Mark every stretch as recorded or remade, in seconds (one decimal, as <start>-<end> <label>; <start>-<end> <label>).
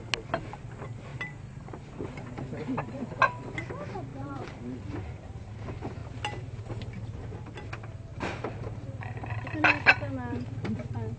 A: 0.0-1.1 recorded; 1.1-2.1 remade; 2.1-4.1 recorded; 4.1-4.6 remade; 4.6-8.1 recorded; 8.1-9.3 remade; 9.3-11.2 recorded